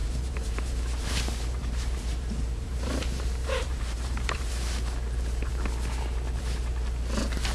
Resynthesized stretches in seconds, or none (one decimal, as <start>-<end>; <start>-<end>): 0.0-4.5